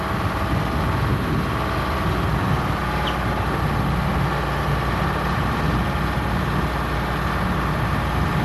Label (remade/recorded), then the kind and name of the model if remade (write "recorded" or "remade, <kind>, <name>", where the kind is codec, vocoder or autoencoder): recorded